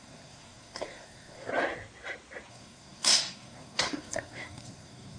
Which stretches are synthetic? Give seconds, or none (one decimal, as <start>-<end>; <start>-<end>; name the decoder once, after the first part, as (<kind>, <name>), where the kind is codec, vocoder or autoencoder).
0.0-1.5 (codec, SNAC); 2.5-5.2